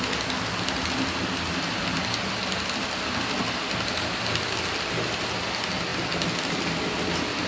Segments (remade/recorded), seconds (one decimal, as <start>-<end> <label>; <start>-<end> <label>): 0.0-7.5 recorded